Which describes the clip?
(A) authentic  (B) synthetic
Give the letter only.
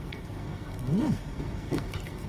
B